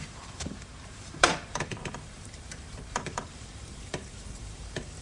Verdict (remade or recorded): remade